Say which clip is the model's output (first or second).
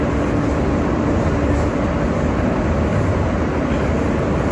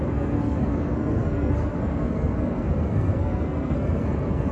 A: second